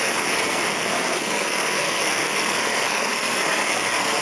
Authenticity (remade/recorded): remade